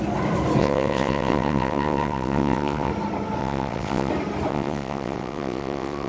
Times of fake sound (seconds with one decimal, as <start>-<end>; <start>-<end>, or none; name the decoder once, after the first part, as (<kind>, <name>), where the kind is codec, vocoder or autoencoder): 0.6-2.9 (vocoder, WaveNeXt); 3.4-4.1; 4.5-6.1